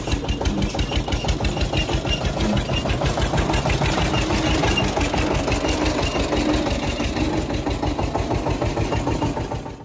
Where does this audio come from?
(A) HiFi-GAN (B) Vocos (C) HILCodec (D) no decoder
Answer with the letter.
D